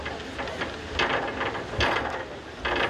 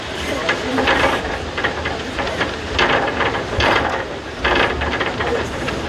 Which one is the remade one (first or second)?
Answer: second